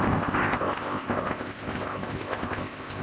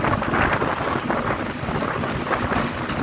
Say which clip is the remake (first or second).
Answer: first